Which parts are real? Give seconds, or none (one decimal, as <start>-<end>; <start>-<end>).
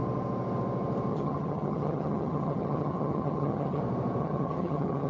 0.0-1.1; 3.8-4.2